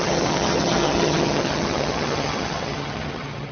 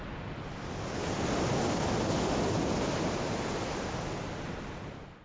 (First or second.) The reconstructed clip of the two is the first